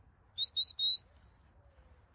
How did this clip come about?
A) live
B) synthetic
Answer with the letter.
A